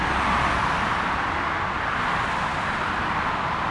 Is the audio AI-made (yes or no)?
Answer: no